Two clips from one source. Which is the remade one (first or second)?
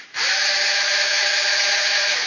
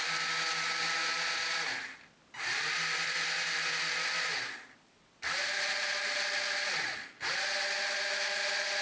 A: first